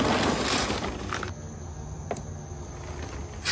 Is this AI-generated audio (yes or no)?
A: no